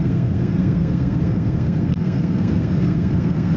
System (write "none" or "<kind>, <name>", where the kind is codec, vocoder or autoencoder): codec, SNAC